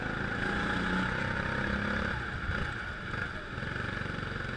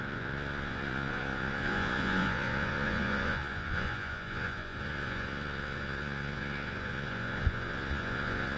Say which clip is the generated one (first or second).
second